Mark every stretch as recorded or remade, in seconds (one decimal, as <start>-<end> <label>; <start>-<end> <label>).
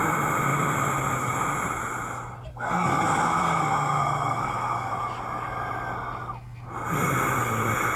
0.0-2.5 recorded; 2.5-4.9 remade; 4.9-8.0 recorded